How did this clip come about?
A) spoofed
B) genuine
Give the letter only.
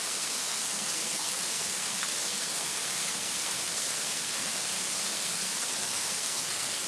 A